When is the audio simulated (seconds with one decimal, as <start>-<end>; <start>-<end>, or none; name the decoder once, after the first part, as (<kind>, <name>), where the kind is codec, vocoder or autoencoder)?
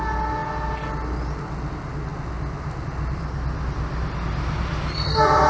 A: none